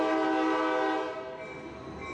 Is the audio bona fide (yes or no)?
yes